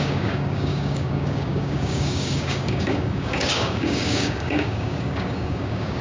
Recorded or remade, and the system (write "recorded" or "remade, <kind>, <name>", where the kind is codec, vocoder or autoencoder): remade, codec, DAC